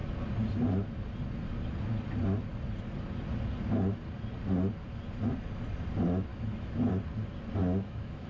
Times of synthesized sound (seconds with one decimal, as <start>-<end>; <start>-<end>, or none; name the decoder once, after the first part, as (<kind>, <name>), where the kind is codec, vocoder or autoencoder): 6.3-6.9 (autoencoder, DAC-VAE); 7.6-8.3